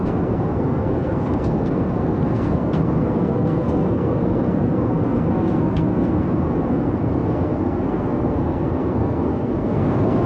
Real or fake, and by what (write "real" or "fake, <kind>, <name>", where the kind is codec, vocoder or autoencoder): fake, codec, SNAC